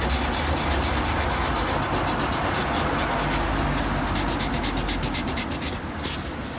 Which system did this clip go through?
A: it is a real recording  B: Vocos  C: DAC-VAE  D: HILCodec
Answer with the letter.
A